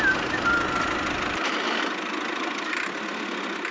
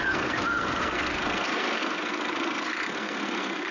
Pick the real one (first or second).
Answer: first